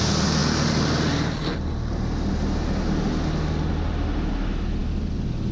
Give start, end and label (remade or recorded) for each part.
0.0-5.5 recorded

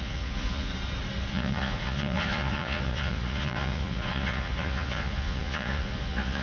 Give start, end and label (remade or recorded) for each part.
0.0-0.7 remade; 0.7-1.3 recorded; 1.3-6.4 remade

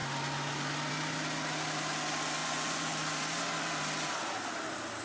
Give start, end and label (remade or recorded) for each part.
0.0-2.4 recorded; 2.4-2.9 remade; 2.9-5.0 recorded

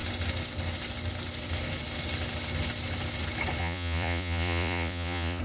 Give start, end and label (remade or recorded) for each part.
0.0-3.6 recorded; 3.6-5.4 remade

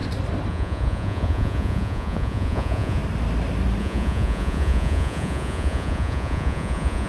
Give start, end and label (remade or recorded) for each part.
0.0-0.5 recorded; 0.5-3.0 remade; 3.0-3.8 recorded; 3.8-7.1 remade